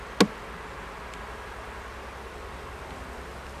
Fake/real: real